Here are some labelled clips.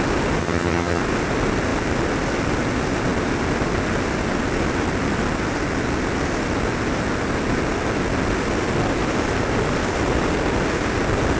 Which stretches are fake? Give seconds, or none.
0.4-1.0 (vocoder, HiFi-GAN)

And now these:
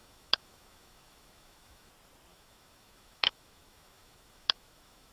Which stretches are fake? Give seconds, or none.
0.0-1.9 (autoencoder, DAC-VAE); 2.3-5.1

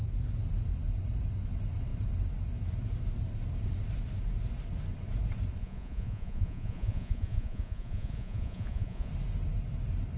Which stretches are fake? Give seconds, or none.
5.6-9.1 (vocoder, Vocos)

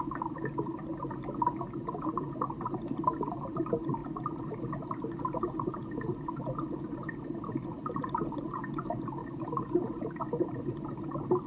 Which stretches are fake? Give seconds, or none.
4.0-4.9 (vocoder, BigVGAN v2); 5.8-6.3; 9.2-10.6